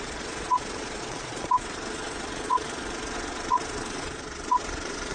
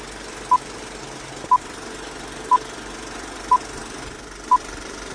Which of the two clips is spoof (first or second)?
first